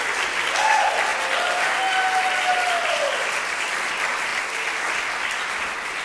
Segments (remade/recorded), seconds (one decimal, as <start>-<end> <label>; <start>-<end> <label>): 0.0-6.0 recorded